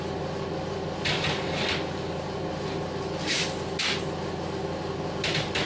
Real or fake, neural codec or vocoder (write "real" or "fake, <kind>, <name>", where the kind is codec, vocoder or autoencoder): real